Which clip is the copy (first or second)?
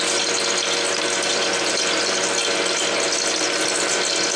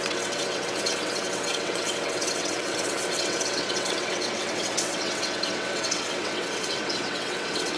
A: second